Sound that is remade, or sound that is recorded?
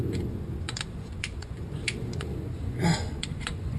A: remade